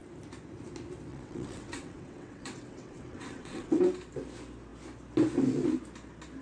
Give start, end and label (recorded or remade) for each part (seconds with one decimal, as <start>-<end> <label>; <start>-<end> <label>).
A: 0.0-1.1 recorded; 1.1-3.8 remade; 3.8-6.4 recorded